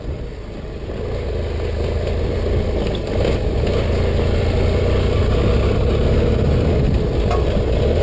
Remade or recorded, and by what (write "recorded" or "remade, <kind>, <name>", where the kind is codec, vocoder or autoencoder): recorded